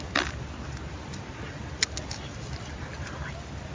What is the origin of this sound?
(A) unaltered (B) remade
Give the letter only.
A